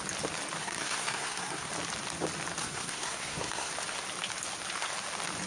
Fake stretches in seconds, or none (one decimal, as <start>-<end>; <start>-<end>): 0.6-1.7; 2.6-3.7